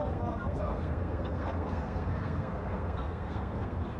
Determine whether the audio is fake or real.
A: fake